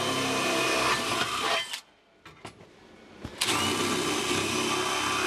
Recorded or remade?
recorded